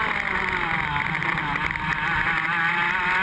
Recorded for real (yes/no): yes